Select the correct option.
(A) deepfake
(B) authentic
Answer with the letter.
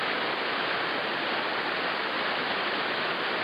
B